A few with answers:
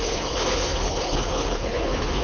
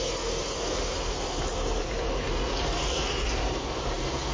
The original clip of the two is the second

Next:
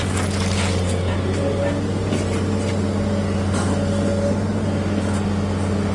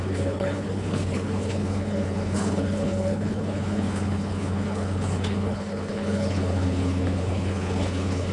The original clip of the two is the first